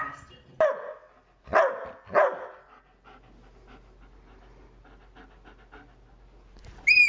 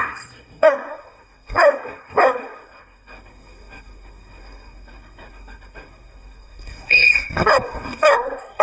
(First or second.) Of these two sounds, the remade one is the second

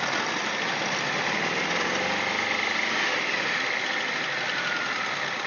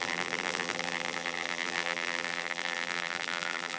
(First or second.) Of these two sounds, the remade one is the second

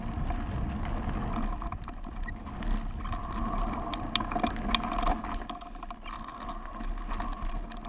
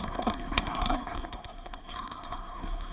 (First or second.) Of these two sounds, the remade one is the second